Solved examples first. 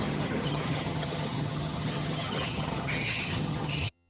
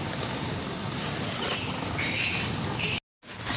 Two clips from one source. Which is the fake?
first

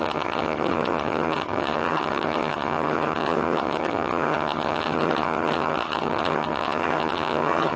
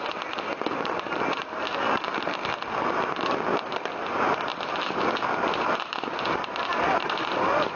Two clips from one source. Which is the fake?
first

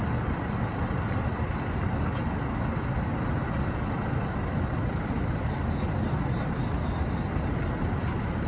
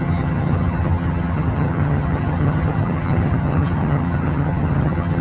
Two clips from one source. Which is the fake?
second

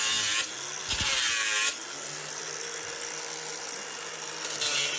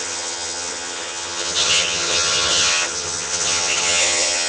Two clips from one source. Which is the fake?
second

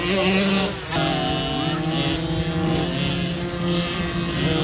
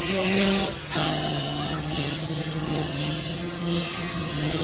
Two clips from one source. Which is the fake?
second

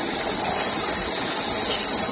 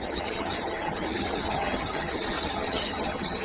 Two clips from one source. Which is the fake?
second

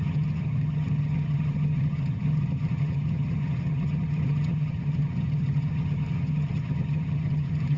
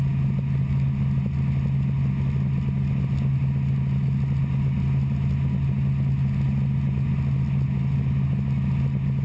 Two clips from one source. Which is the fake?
first